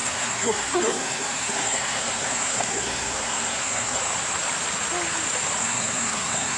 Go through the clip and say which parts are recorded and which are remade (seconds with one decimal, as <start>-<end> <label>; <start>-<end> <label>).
0.0-4.0 remade; 4.0-5.6 recorded; 5.6-6.6 remade